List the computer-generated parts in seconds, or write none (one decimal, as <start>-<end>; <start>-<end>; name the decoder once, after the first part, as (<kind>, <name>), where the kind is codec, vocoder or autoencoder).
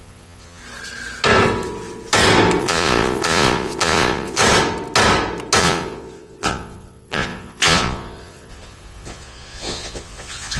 0.0-0.6 (vocoder, Vocos); 2.6-4.4; 5.6-10.6